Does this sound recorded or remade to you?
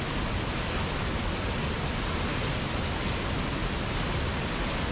recorded